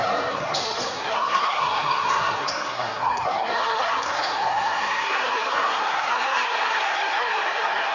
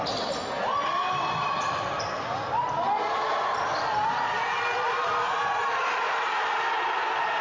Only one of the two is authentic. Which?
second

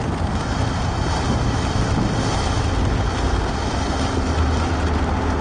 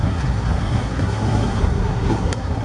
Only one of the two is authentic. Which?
first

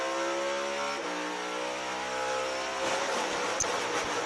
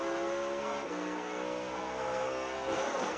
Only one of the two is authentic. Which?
first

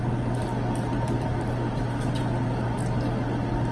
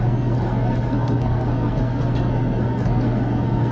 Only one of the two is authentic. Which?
first